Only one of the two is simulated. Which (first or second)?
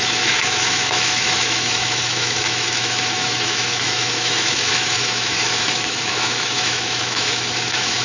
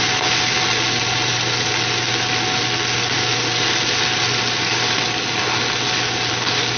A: first